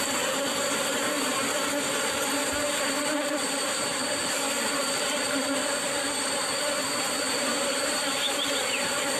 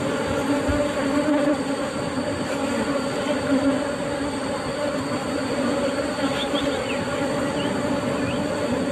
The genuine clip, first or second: second